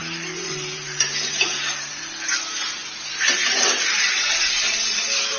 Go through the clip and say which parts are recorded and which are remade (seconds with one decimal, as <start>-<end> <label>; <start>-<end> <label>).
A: 0.0-1.9 remade; 1.9-5.4 recorded